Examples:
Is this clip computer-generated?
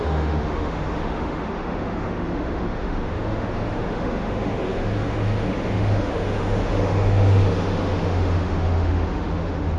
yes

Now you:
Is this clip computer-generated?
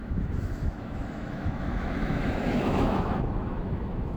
yes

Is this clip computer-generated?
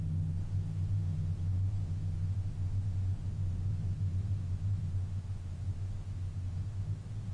yes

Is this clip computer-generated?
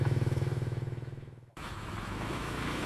yes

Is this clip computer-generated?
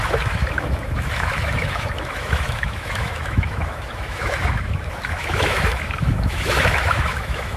yes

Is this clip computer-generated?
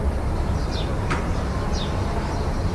no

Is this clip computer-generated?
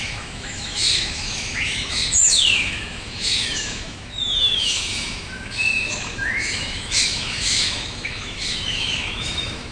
yes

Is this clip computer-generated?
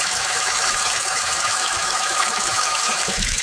yes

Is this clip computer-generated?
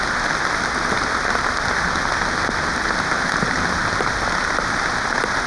no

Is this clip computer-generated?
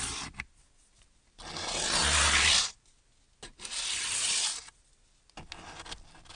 no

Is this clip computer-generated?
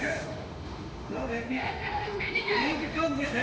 yes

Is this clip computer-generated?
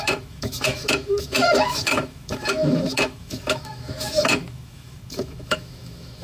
yes